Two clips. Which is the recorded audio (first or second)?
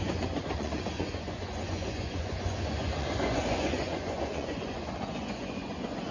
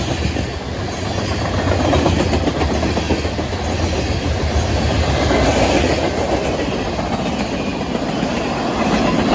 second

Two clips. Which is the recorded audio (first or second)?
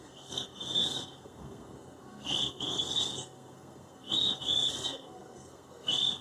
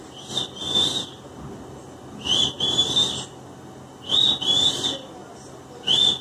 second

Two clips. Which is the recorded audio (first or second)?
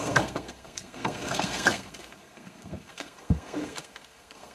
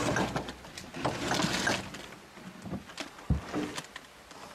second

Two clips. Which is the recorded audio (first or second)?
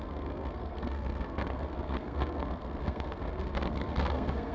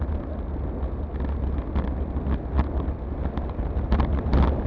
second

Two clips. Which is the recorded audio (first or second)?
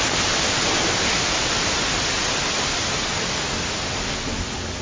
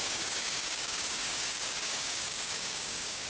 first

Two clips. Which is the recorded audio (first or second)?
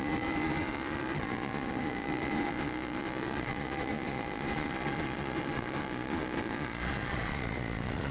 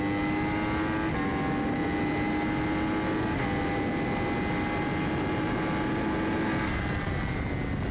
second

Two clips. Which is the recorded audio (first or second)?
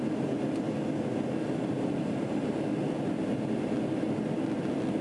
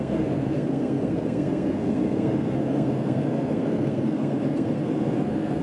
first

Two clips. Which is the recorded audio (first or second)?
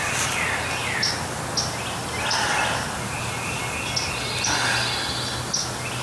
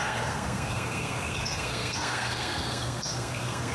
first